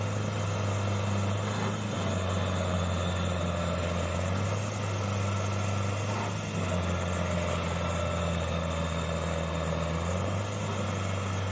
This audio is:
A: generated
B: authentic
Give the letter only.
B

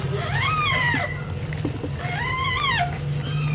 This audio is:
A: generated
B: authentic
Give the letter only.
B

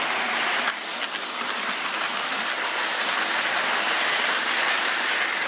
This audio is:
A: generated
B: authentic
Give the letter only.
B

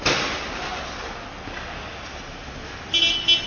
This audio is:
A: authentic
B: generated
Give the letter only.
A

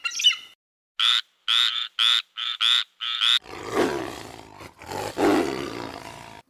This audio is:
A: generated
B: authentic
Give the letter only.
B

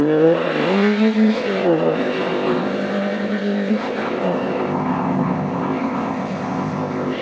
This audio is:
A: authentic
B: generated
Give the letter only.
B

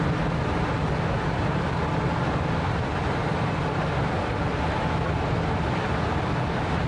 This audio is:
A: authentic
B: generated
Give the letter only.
A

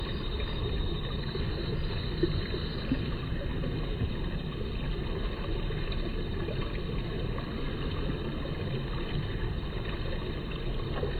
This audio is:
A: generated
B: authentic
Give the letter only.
B